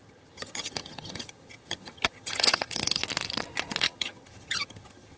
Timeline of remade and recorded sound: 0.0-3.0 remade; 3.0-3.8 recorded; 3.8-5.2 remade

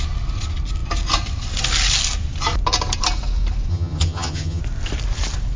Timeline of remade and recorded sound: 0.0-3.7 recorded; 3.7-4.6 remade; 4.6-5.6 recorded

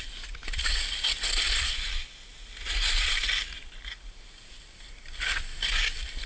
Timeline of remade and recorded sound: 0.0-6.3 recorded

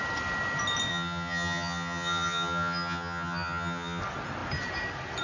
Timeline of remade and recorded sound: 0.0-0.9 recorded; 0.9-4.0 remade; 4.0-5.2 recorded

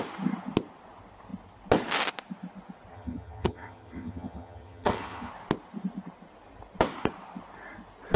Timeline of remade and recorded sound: 0.0-2.9 recorded; 2.9-5.3 remade; 5.3-8.2 recorded

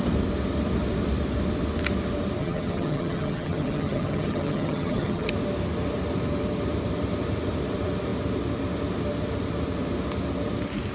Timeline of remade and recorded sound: 0.0-2.4 recorded; 2.4-5.3 remade; 5.3-10.9 recorded